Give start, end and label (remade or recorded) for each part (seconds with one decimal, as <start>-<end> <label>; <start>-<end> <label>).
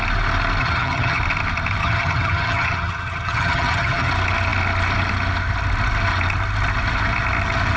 0.0-0.6 recorded; 0.6-1.2 remade; 1.2-1.8 recorded; 1.8-4.1 remade; 4.1-7.8 recorded